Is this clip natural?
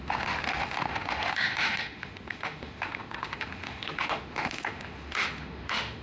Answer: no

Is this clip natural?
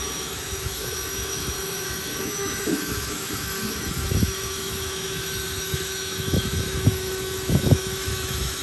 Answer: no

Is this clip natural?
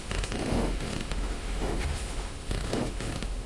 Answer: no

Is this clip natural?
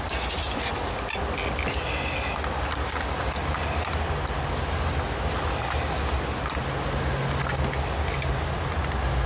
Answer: yes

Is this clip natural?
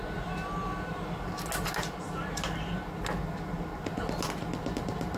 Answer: yes